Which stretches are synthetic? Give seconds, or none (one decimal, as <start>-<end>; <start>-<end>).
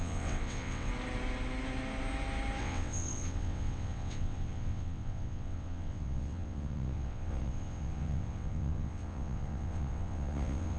0.0-0.9; 2.6-10.8